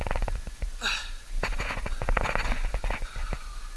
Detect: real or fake fake